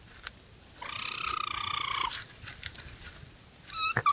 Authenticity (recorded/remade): recorded